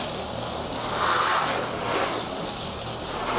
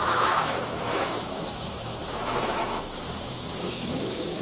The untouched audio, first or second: first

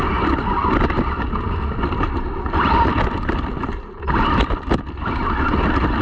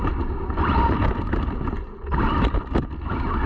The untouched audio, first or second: second